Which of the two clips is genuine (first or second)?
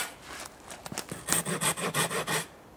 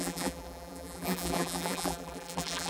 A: first